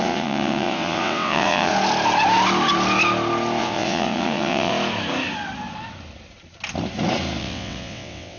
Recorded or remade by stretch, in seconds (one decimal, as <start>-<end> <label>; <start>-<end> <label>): 0.0-1.7 remade; 1.7-3.6 recorded; 3.6-4.7 remade; 4.7-7.4 recorded; 7.4-8.4 remade